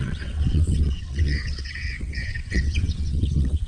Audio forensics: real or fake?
fake